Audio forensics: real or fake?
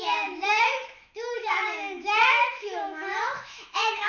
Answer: fake